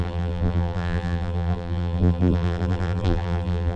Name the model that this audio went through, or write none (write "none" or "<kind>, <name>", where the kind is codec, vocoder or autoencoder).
vocoder, BigVGAN v2